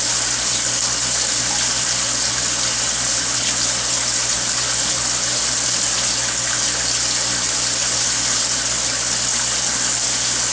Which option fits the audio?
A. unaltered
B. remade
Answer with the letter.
A